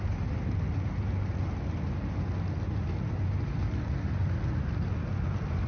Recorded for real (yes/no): yes